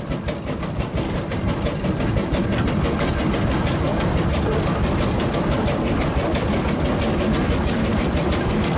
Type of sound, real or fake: real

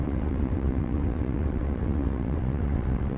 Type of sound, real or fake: fake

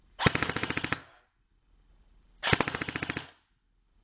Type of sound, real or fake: real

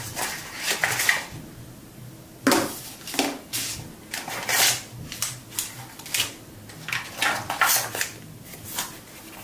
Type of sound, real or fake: real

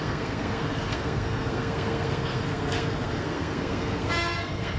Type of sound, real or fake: fake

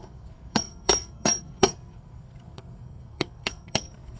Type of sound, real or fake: fake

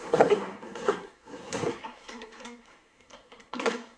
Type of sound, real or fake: fake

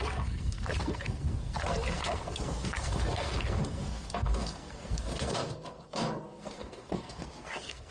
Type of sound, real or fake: fake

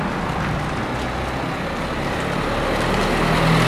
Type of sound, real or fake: real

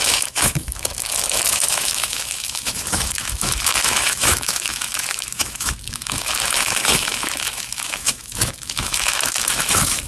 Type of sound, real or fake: fake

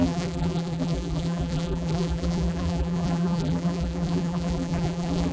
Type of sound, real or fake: fake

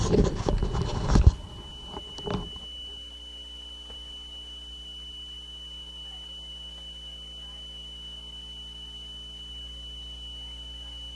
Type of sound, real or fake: fake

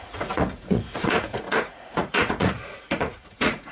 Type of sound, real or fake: fake